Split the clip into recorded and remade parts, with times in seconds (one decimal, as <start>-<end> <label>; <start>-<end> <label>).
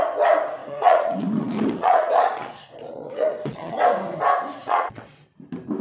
0.0-0.6 recorded; 0.6-3.8 remade; 3.8-4.6 recorded; 4.6-5.2 remade; 5.2-5.8 recorded